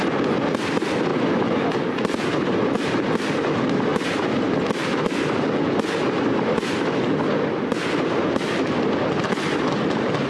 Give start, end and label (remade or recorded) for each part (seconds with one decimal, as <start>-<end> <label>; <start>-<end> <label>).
0.0-10.3 recorded